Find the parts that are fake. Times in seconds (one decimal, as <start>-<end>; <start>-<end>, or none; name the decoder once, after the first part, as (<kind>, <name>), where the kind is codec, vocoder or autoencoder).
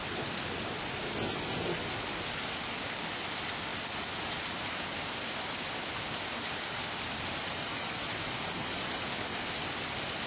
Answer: none